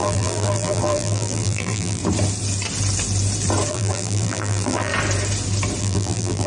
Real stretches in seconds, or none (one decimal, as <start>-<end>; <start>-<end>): 2.0-3.7; 4.9-5.8